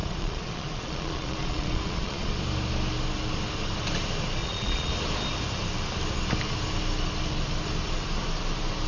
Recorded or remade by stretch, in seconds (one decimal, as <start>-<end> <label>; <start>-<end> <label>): 0.0-2.3 remade; 2.3-4.4 recorded; 4.4-4.9 remade; 4.9-8.9 recorded